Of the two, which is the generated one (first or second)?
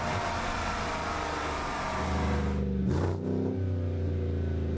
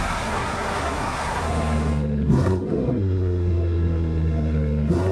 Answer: second